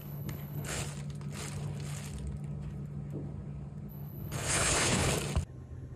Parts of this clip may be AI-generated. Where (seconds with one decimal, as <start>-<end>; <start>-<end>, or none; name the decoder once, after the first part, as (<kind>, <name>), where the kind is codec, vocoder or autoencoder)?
0.0-0.8 (codec, HILCodec); 3.9-5.1